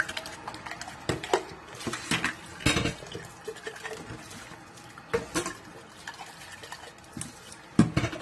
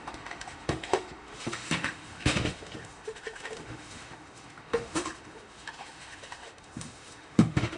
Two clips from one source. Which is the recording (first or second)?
first